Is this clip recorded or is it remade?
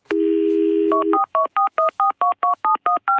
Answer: remade